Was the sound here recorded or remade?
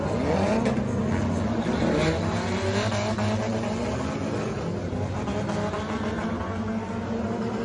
recorded